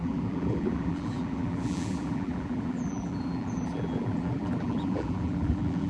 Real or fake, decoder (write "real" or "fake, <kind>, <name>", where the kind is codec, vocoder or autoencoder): fake, vocoder, BigVGAN v2